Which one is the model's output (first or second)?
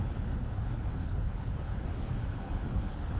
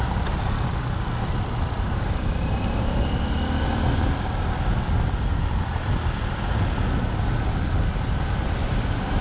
first